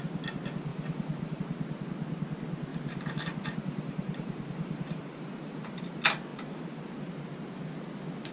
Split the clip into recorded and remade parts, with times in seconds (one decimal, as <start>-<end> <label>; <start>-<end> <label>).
0.0-0.7 recorded; 0.7-1.4 remade; 1.4-2.7 recorded; 2.7-5.8 remade; 5.8-6.3 recorded; 6.3-6.8 remade; 6.8-8.3 recorded